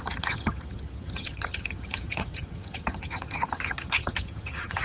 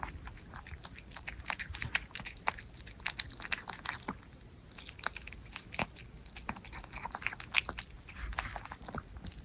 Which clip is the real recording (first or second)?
second